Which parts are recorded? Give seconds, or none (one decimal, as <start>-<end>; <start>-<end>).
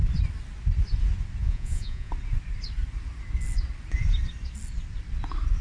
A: 0.0-1.4; 2.1-5.6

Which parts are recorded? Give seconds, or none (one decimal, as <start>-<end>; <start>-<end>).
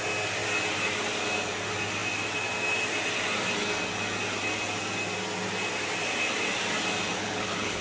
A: 0.0-7.2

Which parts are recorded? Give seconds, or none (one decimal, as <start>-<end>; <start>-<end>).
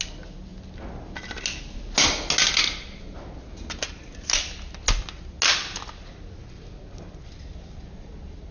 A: 0.0-8.5